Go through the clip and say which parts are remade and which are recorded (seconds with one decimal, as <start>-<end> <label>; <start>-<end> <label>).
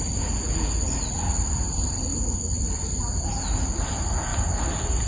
0.0-5.1 recorded